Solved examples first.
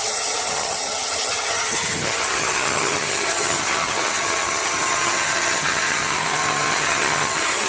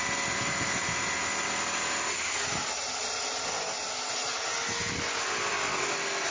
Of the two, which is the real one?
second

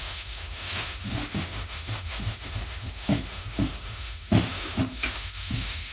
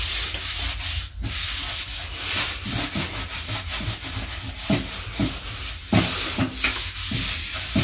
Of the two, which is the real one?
second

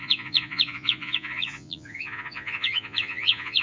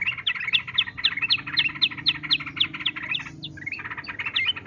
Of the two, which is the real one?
second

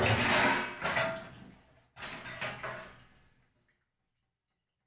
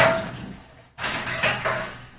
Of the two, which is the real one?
first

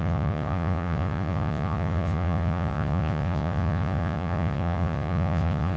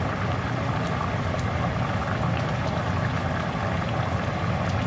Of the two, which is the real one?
second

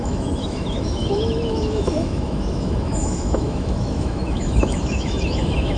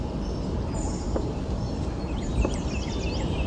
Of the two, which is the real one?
second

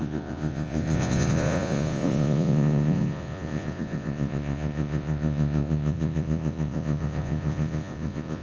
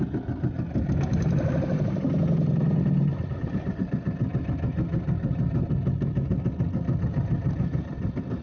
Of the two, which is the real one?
second